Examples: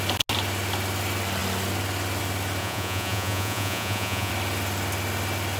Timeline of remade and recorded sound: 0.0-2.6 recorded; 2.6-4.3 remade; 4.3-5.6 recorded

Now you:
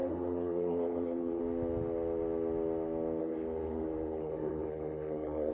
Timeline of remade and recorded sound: 0.0-1.4 remade; 1.4-3.2 recorded; 3.2-5.5 remade

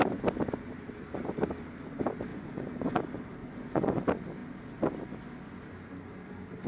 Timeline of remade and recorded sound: 0.0-2.3 recorded; 2.3-3.0 remade; 3.0-3.4 recorded; 3.4-4.0 remade; 4.0-6.7 recorded

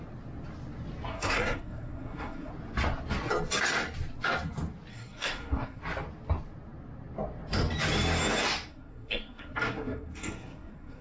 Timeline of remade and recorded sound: 0.0-1.1 recorded; 1.1-2.5 remade; 2.5-4.9 recorded; 4.9-5.8 remade; 5.8-8.7 recorded; 8.7-11.0 remade